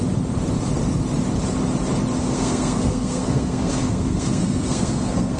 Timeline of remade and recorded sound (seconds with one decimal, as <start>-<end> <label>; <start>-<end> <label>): 0.0-2.2 recorded; 2.2-5.4 remade